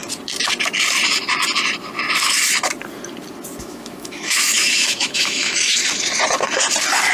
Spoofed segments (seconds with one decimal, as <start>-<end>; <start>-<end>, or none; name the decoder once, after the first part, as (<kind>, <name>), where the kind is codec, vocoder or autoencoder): 3.6-5.8 (autoencoder, DAC-VAE)